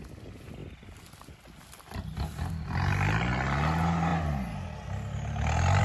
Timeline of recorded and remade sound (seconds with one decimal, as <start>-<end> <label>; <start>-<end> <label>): 0.0-5.8 recorded